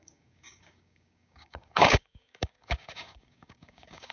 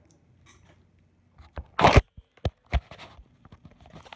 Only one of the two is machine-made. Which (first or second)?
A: first